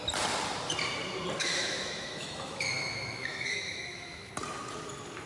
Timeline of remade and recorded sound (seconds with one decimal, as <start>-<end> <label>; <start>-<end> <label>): 0.0-1.4 recorded; 1.4-4.3 remade; 4.3-5.3 recorded